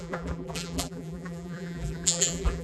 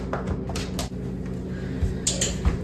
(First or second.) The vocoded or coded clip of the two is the first